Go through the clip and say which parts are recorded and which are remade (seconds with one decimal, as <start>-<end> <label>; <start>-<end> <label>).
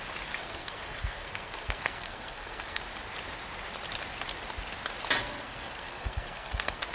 0.0-0.4 recorded; 0.4-2.8 remade; 2.8-5.2 recorded; 5.2-6.9 remade